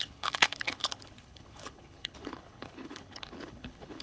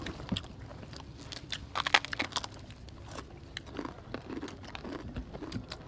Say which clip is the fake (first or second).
first